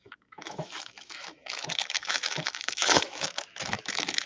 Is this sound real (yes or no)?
no